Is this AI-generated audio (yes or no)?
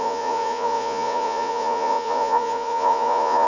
yes